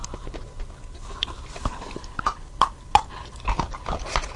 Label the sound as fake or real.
real